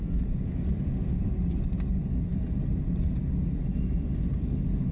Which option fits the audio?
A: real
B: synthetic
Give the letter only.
A